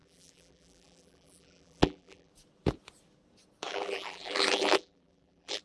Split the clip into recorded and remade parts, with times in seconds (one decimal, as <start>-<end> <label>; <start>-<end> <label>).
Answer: 0.0-2.3 remade; 2.3-3.7 recorded; 3.7-5.6 remade